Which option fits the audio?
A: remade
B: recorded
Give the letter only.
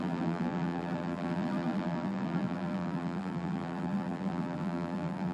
A